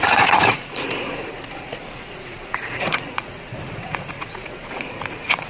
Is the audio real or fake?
fake